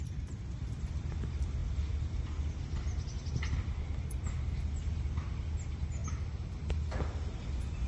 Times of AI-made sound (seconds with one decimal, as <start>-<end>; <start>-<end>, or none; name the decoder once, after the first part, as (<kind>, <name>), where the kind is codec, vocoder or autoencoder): none